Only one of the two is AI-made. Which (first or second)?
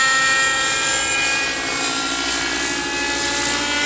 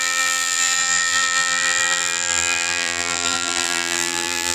second